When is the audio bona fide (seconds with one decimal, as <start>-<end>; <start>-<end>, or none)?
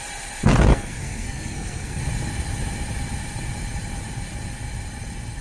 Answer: 0.0-0.7; 2.0-5.4